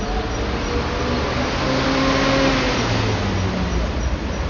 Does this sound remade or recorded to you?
recorded